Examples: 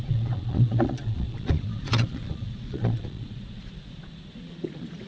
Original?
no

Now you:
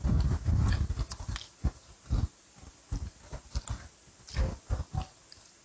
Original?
yes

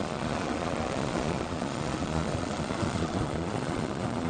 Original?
no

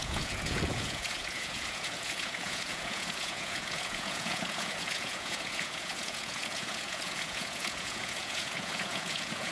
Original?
no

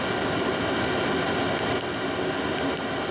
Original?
yes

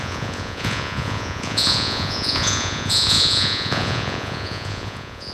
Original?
no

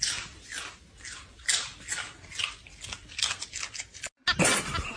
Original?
yes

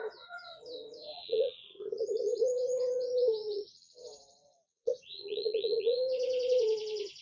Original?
no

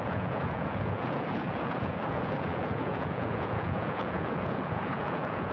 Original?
no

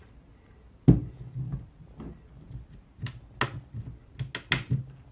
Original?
yes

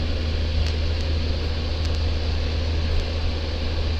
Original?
yes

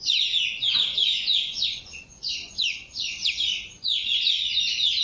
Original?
no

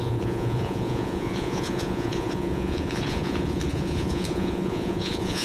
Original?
no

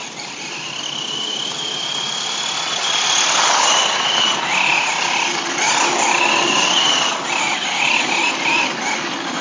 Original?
yes